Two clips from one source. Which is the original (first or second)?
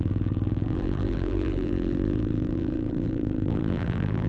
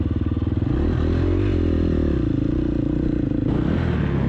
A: second